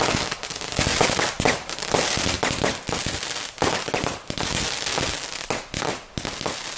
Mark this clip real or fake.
real